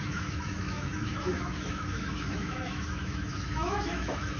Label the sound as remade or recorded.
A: remade